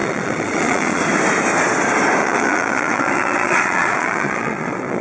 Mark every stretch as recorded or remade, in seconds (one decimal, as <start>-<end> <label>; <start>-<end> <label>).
0.0-1.0 remade; 1.0-2.2 recorded; 2.2-5.0 remade